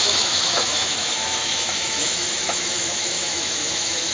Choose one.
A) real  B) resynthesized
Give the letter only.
B